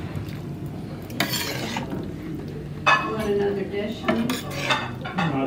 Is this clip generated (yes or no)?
no